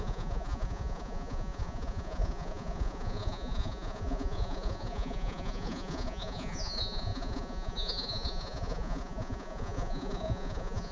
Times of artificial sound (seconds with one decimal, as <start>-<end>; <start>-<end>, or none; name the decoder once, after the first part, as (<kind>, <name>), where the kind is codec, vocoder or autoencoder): 0.0-10.9 (vocoder, Vocos)